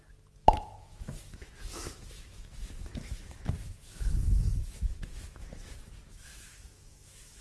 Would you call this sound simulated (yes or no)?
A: yes